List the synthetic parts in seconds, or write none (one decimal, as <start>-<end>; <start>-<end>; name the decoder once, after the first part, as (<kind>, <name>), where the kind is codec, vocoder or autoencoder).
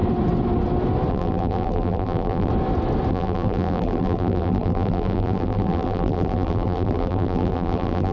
1.1-2.5 (vocoder, BigVGAN v2); 3.1-8.1